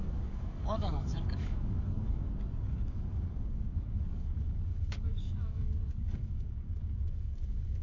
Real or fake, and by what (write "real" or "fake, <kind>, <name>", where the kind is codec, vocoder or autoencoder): fake, codec, DAC